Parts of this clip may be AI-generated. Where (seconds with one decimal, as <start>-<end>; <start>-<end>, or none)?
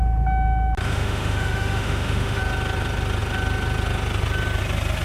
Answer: 0.8-2.4